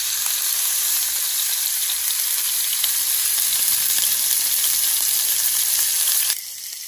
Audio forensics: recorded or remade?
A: recorded